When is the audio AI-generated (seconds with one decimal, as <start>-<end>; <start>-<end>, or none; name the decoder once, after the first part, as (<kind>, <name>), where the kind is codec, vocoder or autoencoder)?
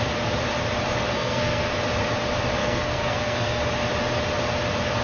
1.1-1.7 (codec, SNAC); 2.6-3.6